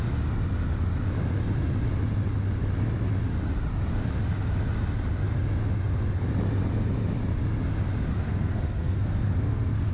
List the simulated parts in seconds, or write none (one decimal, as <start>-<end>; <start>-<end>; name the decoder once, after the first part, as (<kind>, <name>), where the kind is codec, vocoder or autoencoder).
8.2-9.9 (codec, SNAC)